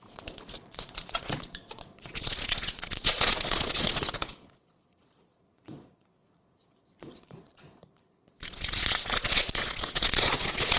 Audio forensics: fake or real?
fake